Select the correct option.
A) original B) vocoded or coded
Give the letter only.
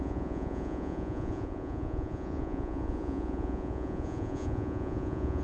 B